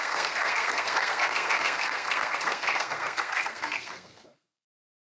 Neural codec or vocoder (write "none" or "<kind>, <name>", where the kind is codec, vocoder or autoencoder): codec, SNAC